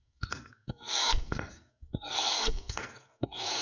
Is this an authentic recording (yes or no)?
no